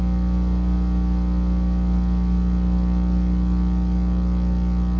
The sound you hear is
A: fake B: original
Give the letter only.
B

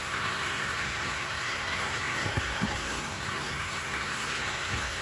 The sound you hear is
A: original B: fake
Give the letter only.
B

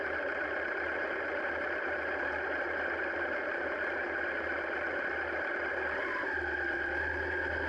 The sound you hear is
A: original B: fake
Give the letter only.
A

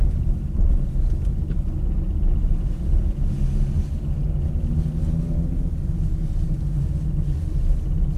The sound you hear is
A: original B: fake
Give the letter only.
A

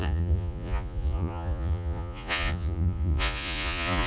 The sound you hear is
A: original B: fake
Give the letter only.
B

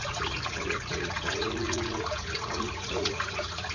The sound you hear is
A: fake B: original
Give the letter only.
A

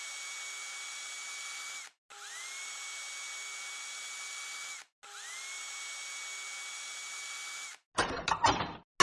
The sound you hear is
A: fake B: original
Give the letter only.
B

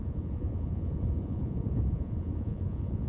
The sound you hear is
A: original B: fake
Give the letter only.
B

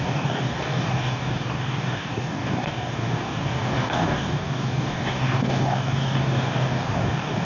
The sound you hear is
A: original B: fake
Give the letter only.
B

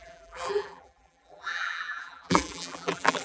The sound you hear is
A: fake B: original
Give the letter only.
A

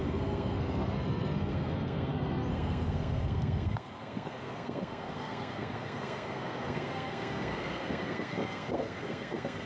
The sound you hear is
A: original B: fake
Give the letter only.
B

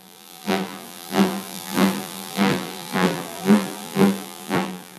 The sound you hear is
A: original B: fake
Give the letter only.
B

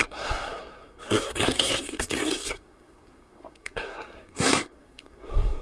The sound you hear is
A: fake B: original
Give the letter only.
A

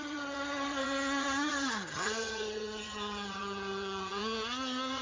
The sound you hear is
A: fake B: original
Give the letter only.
A